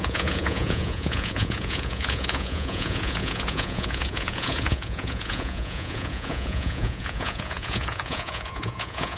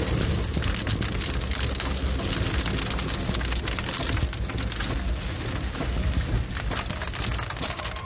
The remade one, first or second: first